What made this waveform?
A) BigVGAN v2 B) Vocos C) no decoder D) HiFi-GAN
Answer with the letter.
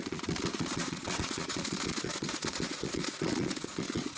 B